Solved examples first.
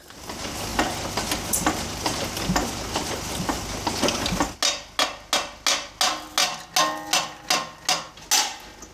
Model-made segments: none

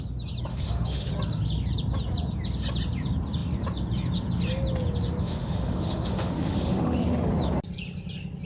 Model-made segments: 0.5-1.1 (autoencoder, DAC-VAE); 5.2-7.3

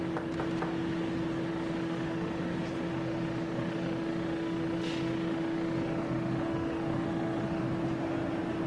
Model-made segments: 1.5-2.4 (autoencoder, DAC-VAE); 2.9-7.6

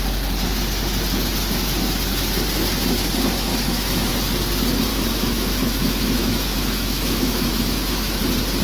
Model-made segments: 3.5-4.1 (autoencoder, DAC-VAE); 4.9-8.2

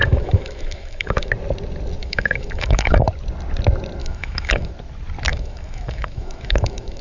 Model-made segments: 0.0-1.3 (autoencoder, DAC-VAE); 2.0-3.1; 4.0-4.7; 5.3-7.0